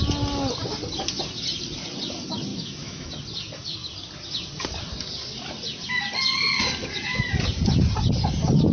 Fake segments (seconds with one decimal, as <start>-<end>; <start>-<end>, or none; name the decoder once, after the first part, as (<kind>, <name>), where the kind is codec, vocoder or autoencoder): 2.5-3.1 (autoencoder, DAC-VAE)

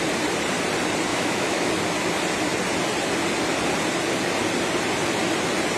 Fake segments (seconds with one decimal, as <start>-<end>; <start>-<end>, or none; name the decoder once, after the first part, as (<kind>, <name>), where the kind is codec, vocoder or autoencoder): 1.1-1.7 (autoencoder, DAC-VAE)

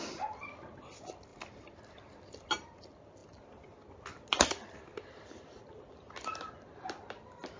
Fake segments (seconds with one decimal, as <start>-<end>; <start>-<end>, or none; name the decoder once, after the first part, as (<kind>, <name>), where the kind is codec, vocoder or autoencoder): none

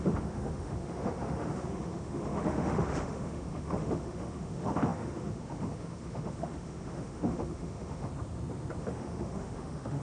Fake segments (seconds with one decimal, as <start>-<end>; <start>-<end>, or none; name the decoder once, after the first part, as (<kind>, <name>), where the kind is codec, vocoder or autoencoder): 0.0-8.1 (autoencoder, DAC-VAE); 8.8-10.0

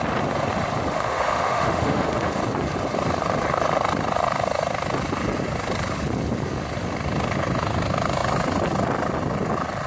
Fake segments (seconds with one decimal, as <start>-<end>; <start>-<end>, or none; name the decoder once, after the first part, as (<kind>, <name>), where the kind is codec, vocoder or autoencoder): 0.9-2.4 (autoencoder, DAC-VAE)

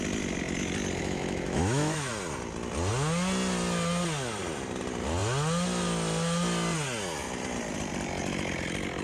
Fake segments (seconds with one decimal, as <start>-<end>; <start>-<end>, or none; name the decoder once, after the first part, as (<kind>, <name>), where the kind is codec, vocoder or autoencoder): 1.0-2.1 (autoencoder, DAC-VAE)

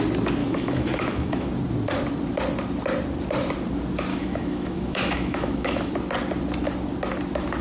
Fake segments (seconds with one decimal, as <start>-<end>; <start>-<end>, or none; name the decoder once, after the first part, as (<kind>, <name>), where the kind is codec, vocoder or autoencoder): 0.4-1.5 (autoencoder, DAC-VAE); 4.1-5.9

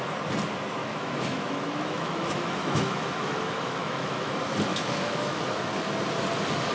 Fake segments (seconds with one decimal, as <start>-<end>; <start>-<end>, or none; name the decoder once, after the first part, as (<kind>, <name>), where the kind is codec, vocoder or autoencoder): 0.8-4.3 (autoencoder, DAC-VAE); 4.7-5.7